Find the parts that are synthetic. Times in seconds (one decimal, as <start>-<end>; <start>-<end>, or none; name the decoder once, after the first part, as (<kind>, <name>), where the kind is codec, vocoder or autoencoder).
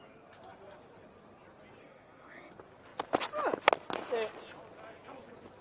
1.8-2.5 (codec, SNAC)